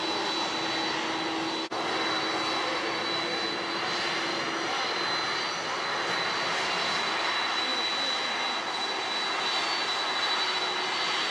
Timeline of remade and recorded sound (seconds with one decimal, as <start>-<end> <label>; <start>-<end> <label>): 0.0-11.3 recorded